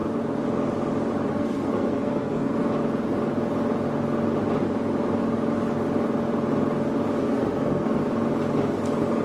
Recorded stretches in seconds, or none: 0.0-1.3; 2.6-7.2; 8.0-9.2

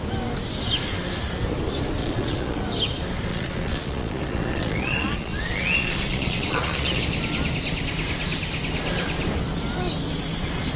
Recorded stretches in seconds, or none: 0.0-2.0; 2.6-3.3; 7.0-10.8

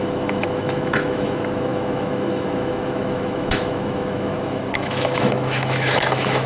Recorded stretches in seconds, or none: none

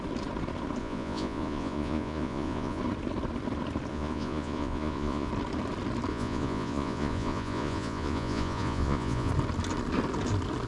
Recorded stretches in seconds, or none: 0.0-0.8; 2.8-3.9; 5.3-6.1; 9.3-10.7

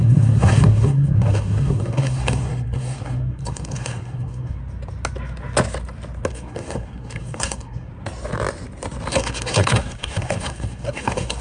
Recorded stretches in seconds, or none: 4.6-6.3; 7.9-9.1

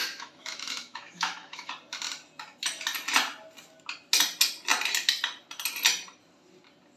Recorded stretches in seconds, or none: 1.7-7.0